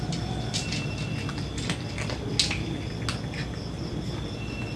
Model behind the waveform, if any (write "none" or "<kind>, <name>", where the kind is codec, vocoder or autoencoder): none